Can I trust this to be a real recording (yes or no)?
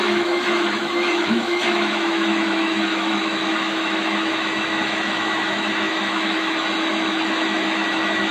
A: no